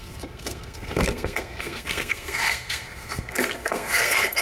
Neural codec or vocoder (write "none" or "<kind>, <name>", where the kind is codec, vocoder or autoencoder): codec, SNAC